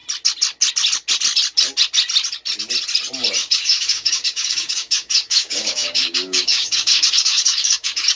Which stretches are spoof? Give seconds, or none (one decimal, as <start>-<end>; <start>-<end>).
3.4-8.2